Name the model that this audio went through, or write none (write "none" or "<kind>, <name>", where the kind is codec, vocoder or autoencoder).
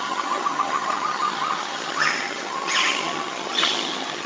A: vocoder, HiFi-GAN